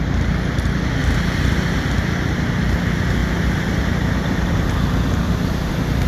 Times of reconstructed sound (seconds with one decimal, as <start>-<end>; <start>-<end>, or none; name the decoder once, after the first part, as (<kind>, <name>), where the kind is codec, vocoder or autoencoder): 1.0-1.9 (vocoder, BigVGAN v2); 3.2-4.5

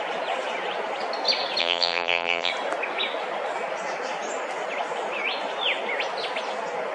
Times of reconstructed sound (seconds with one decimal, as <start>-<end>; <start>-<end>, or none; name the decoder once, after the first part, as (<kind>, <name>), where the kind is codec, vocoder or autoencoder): 1.6-2.5 (vocoder, BigVGAN v2)

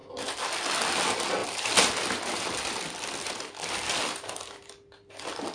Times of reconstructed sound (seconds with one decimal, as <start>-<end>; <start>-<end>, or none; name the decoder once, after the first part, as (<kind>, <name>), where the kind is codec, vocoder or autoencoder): 1.4-4.7 (vocoder, BigVGAN v2)

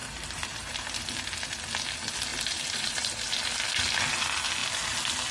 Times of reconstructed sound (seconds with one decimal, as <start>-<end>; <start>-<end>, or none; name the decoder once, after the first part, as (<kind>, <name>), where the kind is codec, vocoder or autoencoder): 0.0-1.0 (vocoder, BigVGAN v2); 2.3-3.1

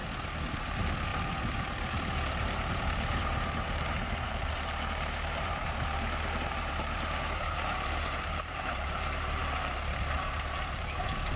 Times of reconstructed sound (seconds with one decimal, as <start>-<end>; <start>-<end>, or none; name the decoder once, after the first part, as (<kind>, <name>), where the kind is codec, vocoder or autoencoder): 0.6-11.4 (vocoder, BigVGAN v2)

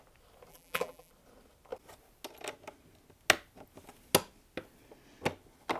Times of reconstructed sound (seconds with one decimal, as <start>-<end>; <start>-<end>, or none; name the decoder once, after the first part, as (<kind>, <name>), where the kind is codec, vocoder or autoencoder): 0.5-1.1 (vocoder, BigVGAN v2)

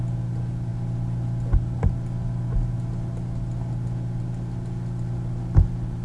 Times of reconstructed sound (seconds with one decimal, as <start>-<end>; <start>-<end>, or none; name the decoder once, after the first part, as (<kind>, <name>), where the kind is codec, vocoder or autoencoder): none